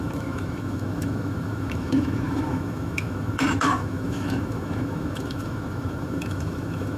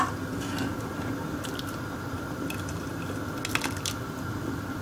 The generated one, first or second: first